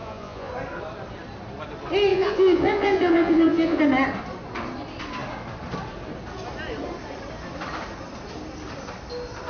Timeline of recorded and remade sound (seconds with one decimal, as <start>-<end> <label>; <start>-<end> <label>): 0.0-0.5 remade; 0.5-2.1 recorded; 2.1-3.8 remade; 3.8-9.5 recorded

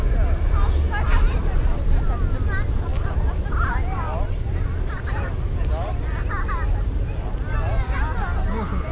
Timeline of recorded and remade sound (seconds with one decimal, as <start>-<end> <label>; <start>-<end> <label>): 0.0-1.5 recorded; 1.5-2.2 remade; 2.2-2.9 recorded; 2.9-5.1 remade; 5.1-8.9 recorded

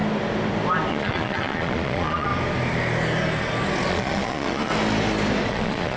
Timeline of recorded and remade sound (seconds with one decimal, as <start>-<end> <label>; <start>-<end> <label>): 0.0-0.9 recorded; 0.9-2.3 remade; 2.3-3.9 recorded; 3.9-4.7 remade; 4.7-5.5 recorded; 5.5-6.0 remade